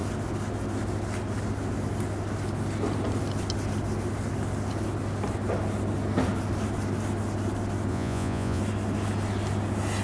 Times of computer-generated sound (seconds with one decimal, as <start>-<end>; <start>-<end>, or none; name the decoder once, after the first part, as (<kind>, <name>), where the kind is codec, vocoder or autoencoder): 7.9-8.6 (vocoder, Vocos)